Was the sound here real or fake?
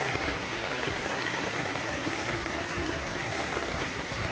fake